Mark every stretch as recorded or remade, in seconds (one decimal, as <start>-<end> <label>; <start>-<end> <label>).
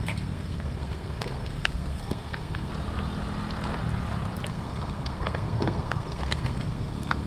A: 0.0-2.7 remade; 2.7-4.5 recorded; 4.5-7.3 remade